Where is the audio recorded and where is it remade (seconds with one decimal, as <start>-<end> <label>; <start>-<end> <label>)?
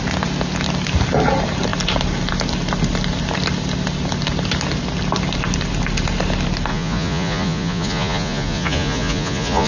0.0-6.7 recorded; 6.7-9.7 remade